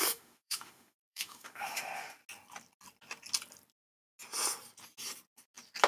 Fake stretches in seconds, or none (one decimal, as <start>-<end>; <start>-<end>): 0.0-2.2